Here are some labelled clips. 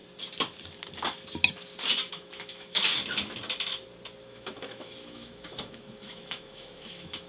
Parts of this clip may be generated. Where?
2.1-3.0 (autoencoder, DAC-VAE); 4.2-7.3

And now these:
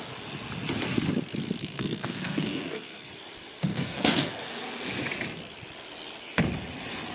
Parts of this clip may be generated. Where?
1.6-3.1 (codec, SNAC); 3.7-4.3

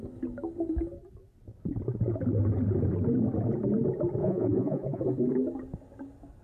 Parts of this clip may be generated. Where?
4.2-5.0 (vocoder, Vocos)

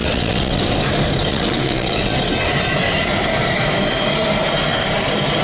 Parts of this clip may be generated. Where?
0.0-0.6 (vocoder, WaveNeXt); 1.3-2.2